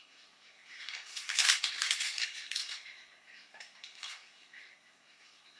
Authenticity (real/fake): fake